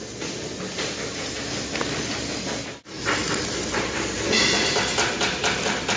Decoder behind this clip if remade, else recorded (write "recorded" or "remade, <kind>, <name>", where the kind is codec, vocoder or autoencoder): recorded